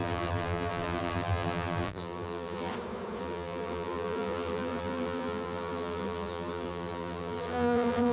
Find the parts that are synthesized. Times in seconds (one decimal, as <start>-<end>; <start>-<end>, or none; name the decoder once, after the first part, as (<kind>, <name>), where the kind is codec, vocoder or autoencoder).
0.0-2.7 (vocoder, BigVGAN v2); 3.2-8.1